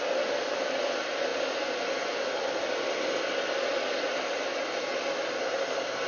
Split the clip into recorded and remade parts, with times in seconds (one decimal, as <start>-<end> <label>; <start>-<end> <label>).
0.0-6.1 recorded